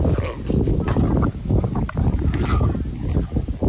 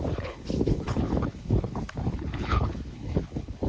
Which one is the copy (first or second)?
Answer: second